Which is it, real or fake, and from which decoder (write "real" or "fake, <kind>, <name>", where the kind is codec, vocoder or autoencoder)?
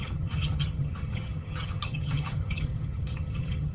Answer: fake, vocoder, HiFi-GAN